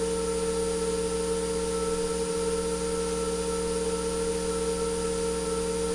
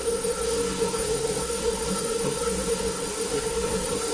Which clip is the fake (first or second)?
second